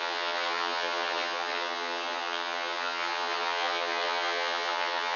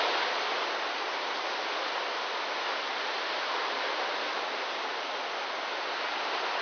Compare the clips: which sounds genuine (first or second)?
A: second